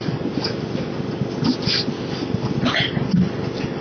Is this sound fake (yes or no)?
no